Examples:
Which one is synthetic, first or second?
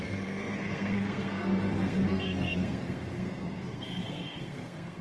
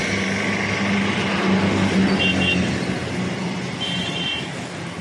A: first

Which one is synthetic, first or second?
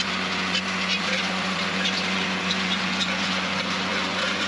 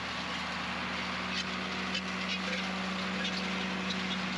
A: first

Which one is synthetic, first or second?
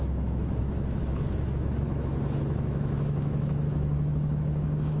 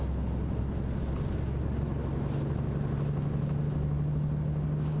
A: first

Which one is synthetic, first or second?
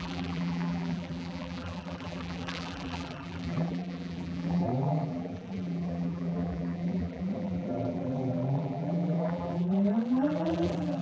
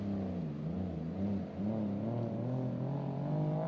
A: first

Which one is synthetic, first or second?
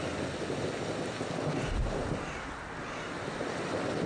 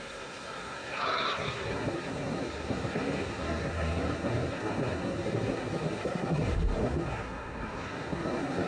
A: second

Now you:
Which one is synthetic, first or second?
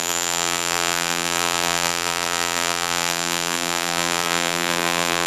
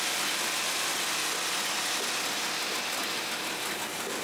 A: first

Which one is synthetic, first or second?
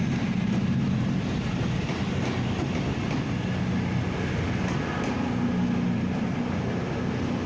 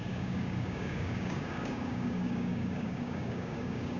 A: second